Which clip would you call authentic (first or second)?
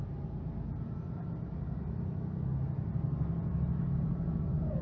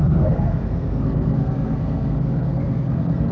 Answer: first